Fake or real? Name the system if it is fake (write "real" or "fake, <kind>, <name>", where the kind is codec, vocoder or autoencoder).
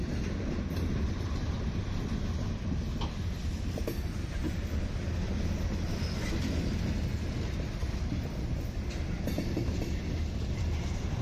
real